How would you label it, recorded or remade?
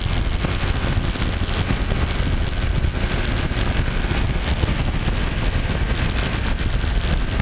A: recorded